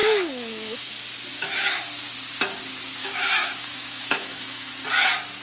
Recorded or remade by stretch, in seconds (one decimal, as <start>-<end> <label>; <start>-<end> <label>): 0.0-0.9 remade; 0.9-1.3 recorded; 1.3-2.0 remade; 2.0-3.0 recorded; 3.0-4.7 remade; 4.7-5.4 recorded